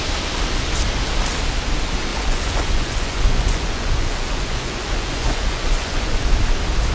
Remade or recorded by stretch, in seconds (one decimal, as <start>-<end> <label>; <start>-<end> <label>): 0.0-2.1 recorded; 2.1-6.2 remade; 6.2-6.9 recorded